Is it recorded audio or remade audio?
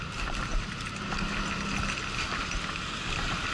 recorded